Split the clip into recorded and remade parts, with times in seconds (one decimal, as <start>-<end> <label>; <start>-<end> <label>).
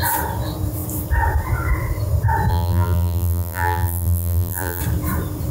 0.0-2.5 recorded; 2.5-4.8 remade; 4.8-5.5 recorded